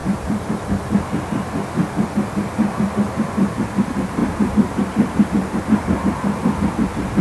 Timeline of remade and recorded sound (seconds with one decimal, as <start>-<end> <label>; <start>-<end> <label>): 0.0-4.2 recorded; 4.2-5.6 remade; 5.6-7.2 recorded